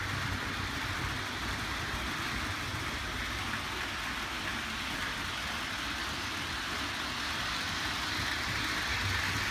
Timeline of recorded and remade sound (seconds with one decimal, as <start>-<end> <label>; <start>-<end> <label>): 0.0-9.5 recorded